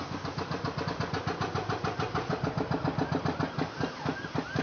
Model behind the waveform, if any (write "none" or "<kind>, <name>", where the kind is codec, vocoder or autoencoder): none